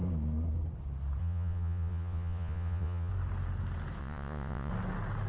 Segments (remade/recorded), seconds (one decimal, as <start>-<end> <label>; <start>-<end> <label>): 0.0-1.2 recorded; 1.2-3.1 remade; 3.1-4.0 recorded; 4.0-4.7 remade; 4.7-5.3 recorded